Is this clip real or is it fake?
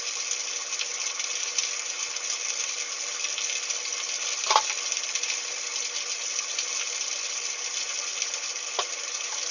real